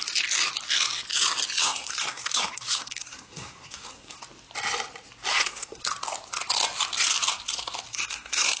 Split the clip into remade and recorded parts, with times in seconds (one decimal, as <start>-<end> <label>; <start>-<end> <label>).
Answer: 0.0-1.6 recorded; 1.6-4.2 remade; 4.2-5.3 recorded; 5.3-5.8 remade; 5.8-7.9 recorded; 7.9-8.6 remade